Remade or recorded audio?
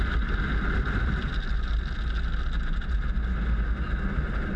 recorded